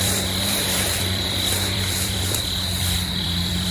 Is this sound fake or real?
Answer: fake